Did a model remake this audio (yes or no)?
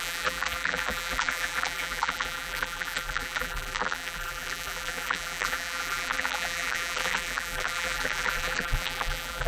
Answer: yes